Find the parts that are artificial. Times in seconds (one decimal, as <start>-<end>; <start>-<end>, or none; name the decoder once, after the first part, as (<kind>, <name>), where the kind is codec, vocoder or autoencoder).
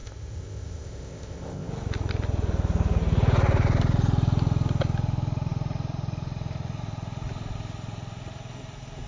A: 0.0-1.7 (codec, ZipCodec)